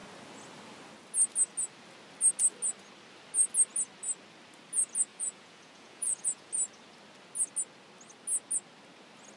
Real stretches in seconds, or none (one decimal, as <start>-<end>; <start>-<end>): 0.0-5.1; 6.5-9.4